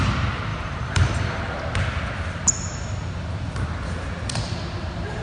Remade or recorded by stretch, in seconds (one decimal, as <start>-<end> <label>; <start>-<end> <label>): 0.0-0.5 recorded; 0.5-1.4 remade; 1.4-5.2 recorded